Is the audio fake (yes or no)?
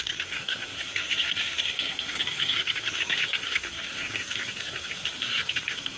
yes